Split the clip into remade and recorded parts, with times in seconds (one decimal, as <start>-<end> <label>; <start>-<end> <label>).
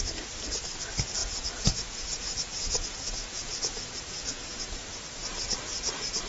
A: 0.0-1.2 recorded; 1.2-5.0 remade; 5.0-6.3 recorded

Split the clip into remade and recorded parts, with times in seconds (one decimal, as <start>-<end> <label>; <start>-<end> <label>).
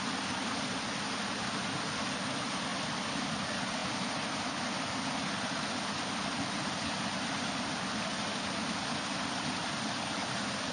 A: 0.0-10.7 recorded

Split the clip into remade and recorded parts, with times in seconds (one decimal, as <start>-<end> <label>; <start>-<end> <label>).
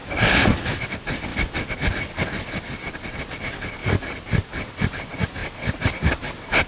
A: 0.0-6.7 recorded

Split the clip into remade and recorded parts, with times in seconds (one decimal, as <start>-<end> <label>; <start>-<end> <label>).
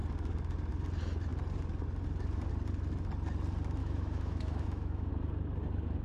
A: 0.0-3.8 recorded; 3.8-5.1 remade; 5.1-6.0 recorded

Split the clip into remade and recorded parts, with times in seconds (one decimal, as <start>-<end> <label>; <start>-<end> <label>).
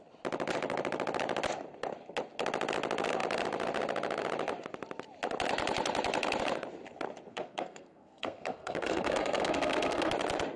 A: 0.0-7.3 recorded; 7.3-10.1 remade; 10.1-10.6 recorded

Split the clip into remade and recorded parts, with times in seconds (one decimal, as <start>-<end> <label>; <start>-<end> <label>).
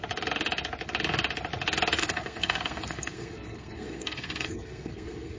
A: 0.0-2.0 recorded; 2.0-5.4 remade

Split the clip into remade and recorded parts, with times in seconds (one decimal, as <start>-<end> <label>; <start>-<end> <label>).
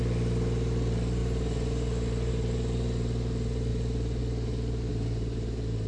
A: 0.0-3.7 recorded; 3.7-4.2 remade; 4.2-4.9 recorded; 4.9-5.9 remade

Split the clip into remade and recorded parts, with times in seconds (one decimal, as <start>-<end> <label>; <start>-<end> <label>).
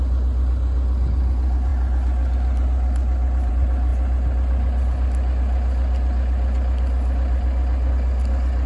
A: 0.0-8.7 recorded